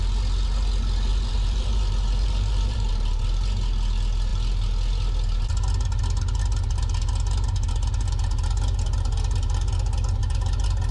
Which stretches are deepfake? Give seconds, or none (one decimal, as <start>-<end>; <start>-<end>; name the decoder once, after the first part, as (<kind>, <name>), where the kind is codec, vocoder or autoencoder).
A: 1.1-2.9 (vocoder, BigVGAN v2)